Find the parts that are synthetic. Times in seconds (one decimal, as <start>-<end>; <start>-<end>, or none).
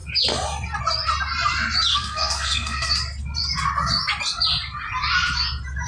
1.9-2.9